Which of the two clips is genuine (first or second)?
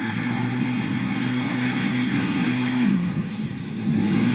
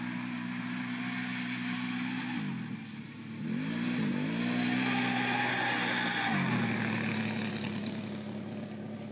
second